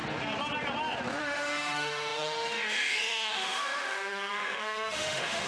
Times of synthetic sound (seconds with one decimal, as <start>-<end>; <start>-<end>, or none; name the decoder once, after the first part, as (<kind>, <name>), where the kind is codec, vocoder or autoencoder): 1.2-5.5 (autoencoder, DAC-VAE)